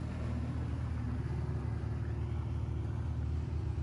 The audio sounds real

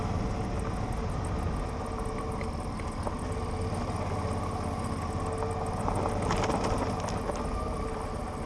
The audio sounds real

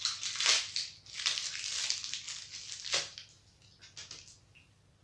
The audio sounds real